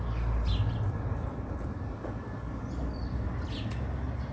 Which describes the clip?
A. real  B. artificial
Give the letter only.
A